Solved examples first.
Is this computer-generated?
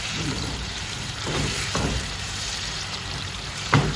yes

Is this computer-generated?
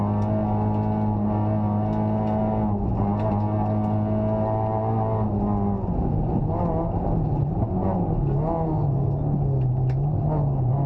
no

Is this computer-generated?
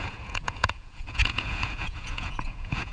yes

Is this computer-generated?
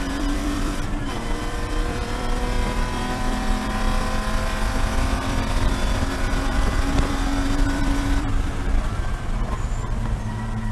yes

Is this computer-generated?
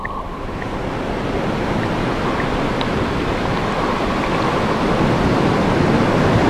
no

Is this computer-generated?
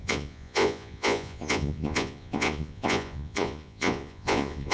yes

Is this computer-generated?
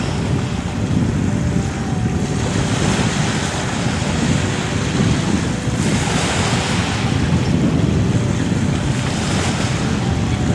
no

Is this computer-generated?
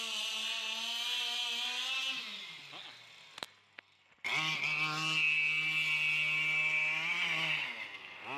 no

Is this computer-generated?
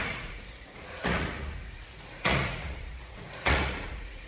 yes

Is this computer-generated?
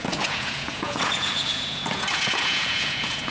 yes